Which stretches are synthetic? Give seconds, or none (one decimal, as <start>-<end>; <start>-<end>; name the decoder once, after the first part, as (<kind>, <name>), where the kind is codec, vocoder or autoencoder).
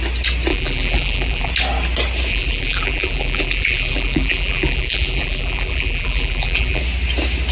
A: 0.5-1.5 (vocoder, BigVGAN v2); 2.3-6.8